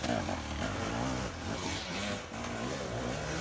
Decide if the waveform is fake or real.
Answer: real